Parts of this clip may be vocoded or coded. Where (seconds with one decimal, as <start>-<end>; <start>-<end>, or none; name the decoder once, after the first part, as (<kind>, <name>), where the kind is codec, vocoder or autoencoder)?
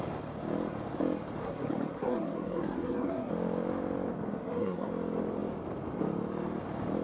1.4-3.3 (codec, SNAC); 4.3-4.9